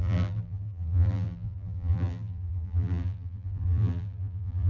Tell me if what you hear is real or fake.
fake